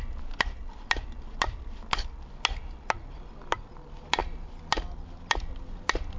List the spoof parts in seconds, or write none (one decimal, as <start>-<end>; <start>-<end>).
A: none